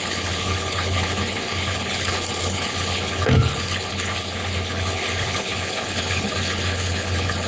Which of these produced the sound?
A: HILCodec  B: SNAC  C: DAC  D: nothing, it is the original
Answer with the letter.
A